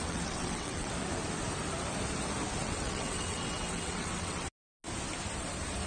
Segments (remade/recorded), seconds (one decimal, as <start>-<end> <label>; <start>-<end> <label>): 0.0-0.9 remade; 0.9-2.6 recorded; 2.6-4.5 remade; 4.5-5.9 recorded